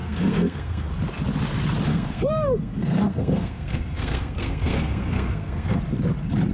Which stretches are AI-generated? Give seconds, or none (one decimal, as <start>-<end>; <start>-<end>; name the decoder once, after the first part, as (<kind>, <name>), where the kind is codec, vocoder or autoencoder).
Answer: 0.0-0.9 (codec, SNAC); 1.9-5.8